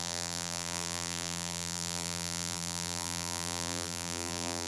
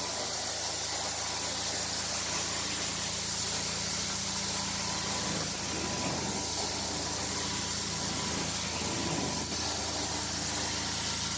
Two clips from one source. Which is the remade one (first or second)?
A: first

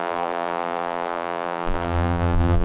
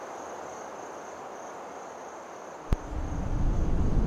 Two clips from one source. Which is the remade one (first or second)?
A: first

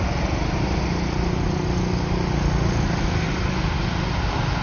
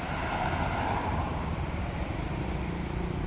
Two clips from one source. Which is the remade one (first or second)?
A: second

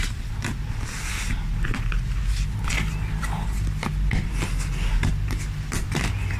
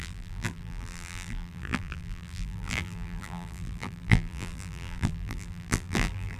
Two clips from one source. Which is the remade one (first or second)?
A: second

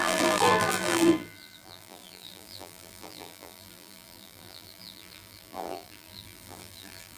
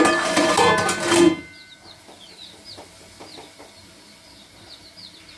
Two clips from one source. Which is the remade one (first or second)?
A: first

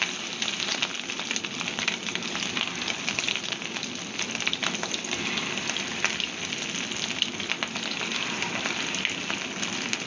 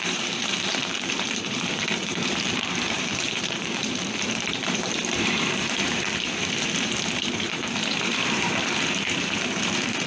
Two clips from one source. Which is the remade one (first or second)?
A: second